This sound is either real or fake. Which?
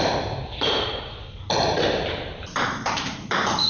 fake